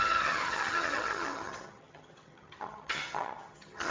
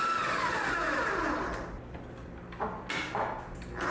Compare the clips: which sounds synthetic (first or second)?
first